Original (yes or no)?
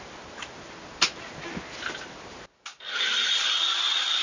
yes